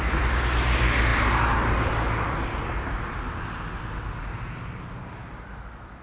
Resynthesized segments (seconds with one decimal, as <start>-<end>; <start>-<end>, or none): none